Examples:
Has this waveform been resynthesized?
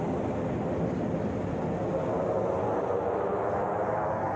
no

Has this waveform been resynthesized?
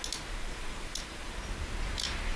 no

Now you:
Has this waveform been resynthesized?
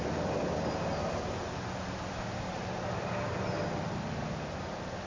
no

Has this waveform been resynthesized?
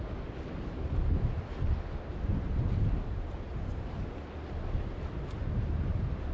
no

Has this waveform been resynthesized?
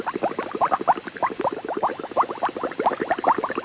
no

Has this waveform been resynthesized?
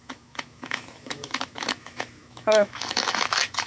yes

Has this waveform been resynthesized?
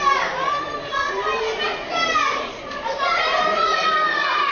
yes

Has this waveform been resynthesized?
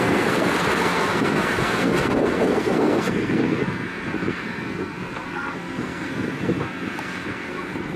yes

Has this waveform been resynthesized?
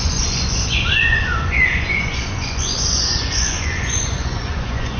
yes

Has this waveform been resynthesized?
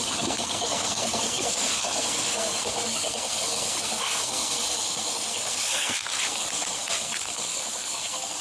yes